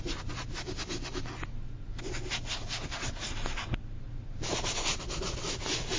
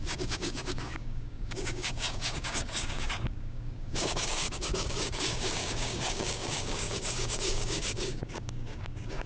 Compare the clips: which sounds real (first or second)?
first